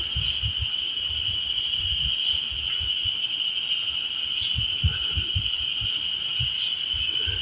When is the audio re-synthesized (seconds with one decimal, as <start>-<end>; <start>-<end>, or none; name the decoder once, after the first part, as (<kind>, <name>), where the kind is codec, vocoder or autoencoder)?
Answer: none